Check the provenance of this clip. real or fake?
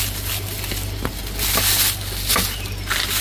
real